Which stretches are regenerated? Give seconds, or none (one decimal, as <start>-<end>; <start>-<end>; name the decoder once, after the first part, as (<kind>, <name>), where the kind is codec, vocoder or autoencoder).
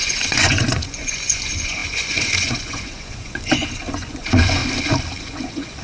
0.0-4.6 (vocoder, Vocos); 5.2-5.8